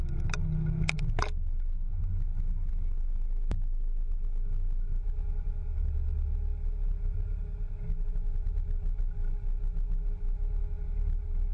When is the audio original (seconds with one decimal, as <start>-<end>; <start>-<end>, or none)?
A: 0.0-11.5